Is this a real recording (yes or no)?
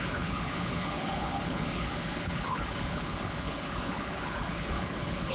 no